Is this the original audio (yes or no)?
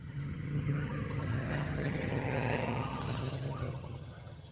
no